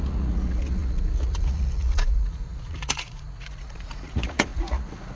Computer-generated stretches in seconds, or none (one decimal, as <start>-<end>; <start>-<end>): 0.0-5.2